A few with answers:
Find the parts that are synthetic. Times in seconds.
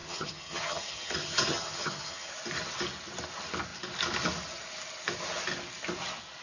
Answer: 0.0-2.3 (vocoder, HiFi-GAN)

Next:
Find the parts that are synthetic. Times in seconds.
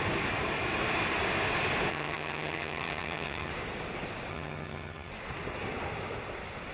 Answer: 1.9-3.5 (vocoder, HiFi-GAN); 4.3-5.1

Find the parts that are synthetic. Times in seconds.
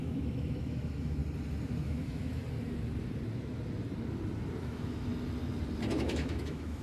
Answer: 0.0-1.2 (autoencoder, DAC-VAE); 1.8-2.4; 4.6-5.1; 5.9-6.8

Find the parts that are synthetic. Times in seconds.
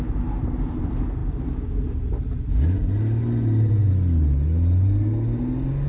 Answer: none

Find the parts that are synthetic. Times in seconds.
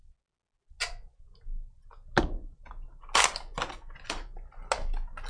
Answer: none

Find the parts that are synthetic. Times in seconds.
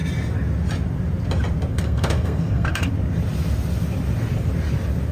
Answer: 1.7-2.9 (codec, SNAC)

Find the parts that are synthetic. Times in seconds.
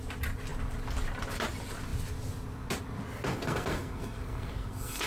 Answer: 3.3-5.1 (codec, SNAC)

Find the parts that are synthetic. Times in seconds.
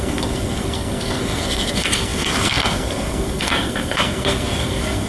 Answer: 0.0-5.1 (codec, SNAC)